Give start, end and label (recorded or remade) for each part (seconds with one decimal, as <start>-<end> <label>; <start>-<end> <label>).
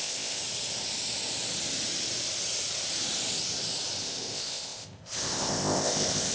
0.0-0.4 remade; 0.4-4.0 recorded; 4.0-6.3 remade